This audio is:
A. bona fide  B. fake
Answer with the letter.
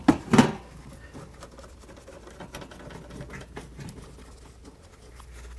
A